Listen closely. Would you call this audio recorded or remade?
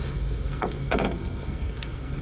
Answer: remade